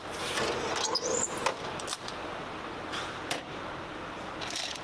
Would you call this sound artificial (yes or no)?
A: no